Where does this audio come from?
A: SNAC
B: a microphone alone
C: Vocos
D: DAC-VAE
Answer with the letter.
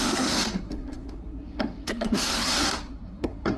A